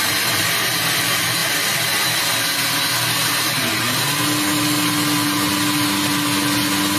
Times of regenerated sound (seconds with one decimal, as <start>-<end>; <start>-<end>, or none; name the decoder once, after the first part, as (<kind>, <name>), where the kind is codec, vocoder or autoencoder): none